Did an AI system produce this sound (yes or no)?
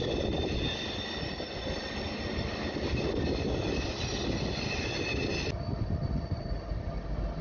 no